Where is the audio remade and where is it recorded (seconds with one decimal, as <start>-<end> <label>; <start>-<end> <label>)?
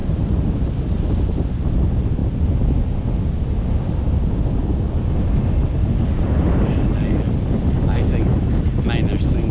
0.0-1.7 remade; 1.7-9.5 recorded